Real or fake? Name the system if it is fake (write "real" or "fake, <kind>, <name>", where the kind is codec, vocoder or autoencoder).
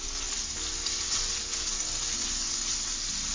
real